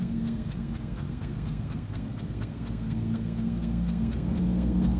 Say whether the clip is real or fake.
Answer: fake